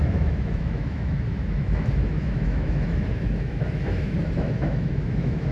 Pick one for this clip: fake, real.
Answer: fake